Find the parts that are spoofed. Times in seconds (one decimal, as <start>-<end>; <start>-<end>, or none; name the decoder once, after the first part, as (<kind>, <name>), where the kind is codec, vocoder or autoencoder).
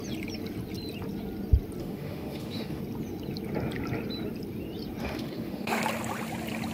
1.8-2.8 (autoencoder, DAC-VAE); 5.0-5.8